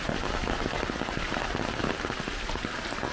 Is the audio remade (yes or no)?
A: no